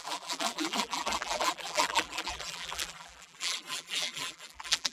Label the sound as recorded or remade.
remade